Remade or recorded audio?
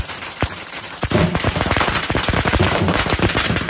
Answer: remade